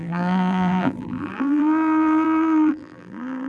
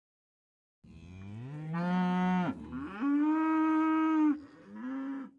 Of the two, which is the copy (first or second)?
first